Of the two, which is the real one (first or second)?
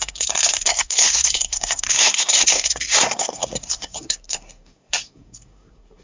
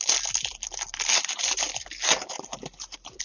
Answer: second